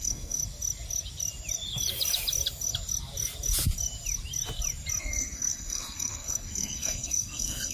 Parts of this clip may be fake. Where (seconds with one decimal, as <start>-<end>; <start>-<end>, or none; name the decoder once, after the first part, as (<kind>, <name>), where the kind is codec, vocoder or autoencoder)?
0.0-0.4 (codec, SNAC); 5.0-7.7